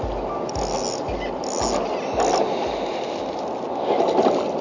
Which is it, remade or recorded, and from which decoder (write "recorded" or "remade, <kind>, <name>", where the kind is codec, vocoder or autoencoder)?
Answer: recorded